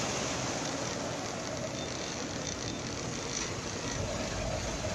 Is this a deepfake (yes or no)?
no